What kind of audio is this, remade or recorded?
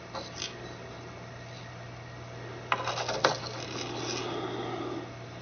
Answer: recorded